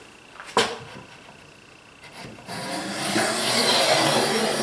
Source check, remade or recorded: recorded